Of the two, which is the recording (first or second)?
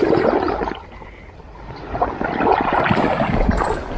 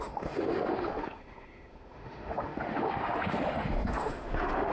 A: first